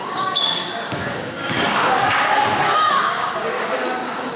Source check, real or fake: fake